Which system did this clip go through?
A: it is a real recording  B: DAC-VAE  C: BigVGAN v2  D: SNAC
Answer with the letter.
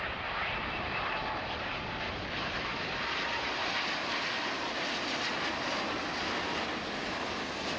A